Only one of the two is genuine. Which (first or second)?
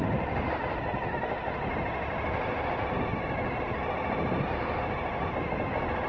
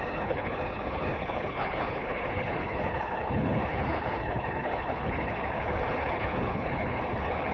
first